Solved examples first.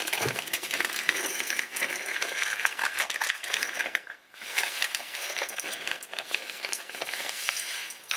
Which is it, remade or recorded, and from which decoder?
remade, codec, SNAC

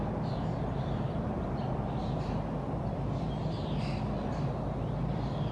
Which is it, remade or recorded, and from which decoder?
recorded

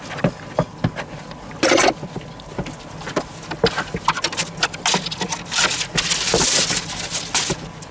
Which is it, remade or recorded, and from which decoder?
recorded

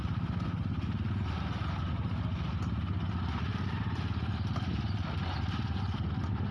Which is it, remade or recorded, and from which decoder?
recorded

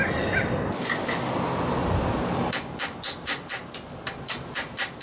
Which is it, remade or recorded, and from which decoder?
recorded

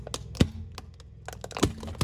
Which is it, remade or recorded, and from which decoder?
recorded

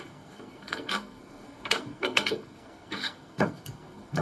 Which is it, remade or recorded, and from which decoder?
remade, codec, SNAC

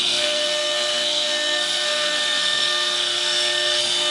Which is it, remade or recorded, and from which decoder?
remade, codec, SNAC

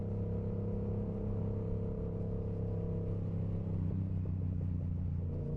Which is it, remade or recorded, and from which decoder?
recorded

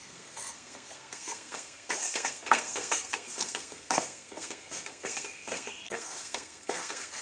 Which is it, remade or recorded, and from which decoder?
remade, codec, SNAC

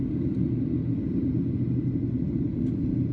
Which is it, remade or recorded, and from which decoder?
recorded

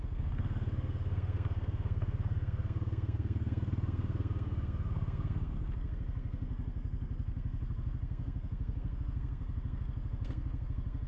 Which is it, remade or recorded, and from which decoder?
remade, codec, SNAC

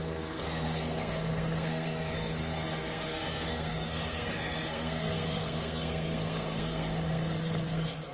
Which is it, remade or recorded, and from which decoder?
remade, codec, SNAC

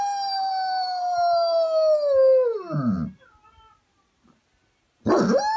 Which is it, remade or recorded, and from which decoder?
recorded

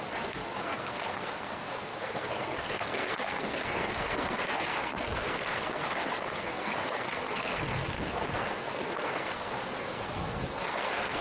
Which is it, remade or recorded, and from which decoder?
remade, codec, SNAC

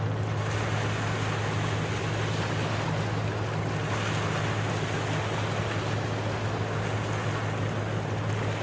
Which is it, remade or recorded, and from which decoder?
recorded